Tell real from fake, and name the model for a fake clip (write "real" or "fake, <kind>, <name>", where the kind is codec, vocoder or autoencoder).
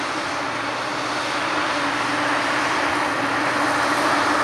real